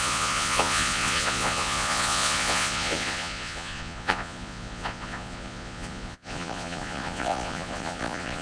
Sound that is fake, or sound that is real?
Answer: fake